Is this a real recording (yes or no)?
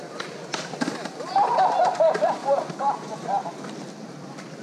no